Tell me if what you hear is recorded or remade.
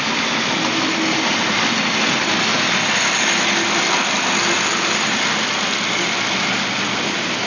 recorded